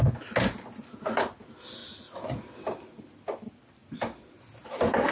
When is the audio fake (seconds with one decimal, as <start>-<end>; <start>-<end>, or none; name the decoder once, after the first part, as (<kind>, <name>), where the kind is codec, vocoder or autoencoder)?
none